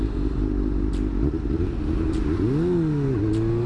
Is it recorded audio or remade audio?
recorded